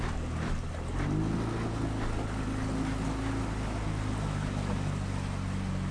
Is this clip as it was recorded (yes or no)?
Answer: yes